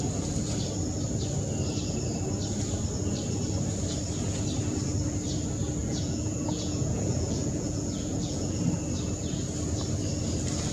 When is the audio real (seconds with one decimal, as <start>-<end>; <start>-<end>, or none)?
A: 0.0-5.8; 8.6-10.7

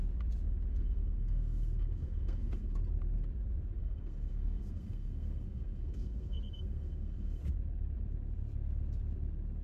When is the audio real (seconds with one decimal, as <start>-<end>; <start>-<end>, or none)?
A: 0.0-0.7; 2.8-3.8; 7.4-9.6

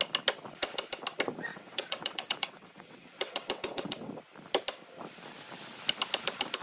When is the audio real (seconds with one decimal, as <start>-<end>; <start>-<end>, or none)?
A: 0.0-1.5; 4.1-6.6

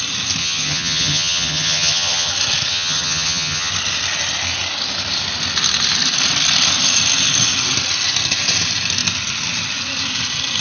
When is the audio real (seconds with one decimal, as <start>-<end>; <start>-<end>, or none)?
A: 0.0-0.4; 2.3-2.7; 3.7-10.6

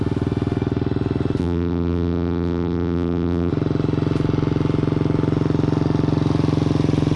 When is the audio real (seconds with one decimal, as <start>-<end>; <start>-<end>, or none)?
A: 0.0-1.4; 3.5-7.2

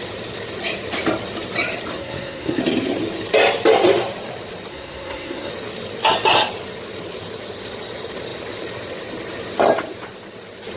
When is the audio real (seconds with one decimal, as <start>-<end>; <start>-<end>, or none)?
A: 0.0-2.0; 2.6-4.7; 5.5-10.8

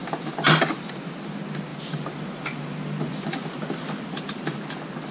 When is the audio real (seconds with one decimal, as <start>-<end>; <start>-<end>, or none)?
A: 0.0-5.1